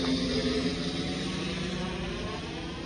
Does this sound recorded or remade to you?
recorded